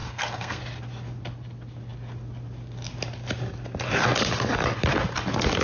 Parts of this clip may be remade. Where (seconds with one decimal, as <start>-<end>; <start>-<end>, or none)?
0.0-0.6